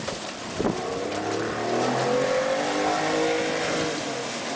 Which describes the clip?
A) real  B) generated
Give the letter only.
A